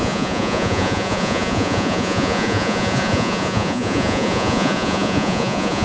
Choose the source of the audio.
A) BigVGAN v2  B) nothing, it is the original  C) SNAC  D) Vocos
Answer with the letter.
D